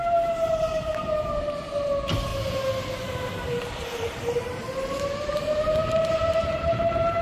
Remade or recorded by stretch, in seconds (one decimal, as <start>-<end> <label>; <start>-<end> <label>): 0.0-7.2 remade